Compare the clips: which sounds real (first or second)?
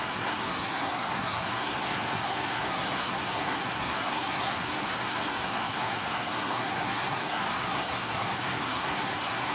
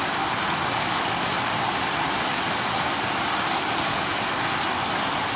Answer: second